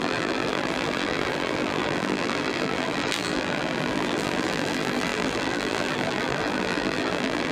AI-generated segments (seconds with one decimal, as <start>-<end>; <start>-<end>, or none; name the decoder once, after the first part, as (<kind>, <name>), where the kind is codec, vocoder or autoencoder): 0.0-7.5 (vocoder, BigVGAN v2)